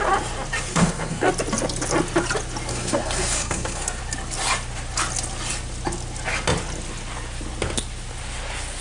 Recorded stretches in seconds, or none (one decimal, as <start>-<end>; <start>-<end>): 0.0-0.7; 1.3-2.7; 4.0-8.8